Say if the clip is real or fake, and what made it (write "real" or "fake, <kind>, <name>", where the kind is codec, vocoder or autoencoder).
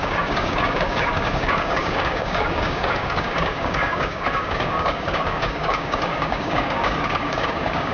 fake, codec, DAC